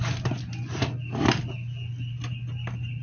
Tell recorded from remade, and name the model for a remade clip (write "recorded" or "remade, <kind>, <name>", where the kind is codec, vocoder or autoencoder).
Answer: recorded